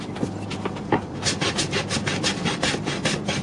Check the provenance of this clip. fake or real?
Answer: real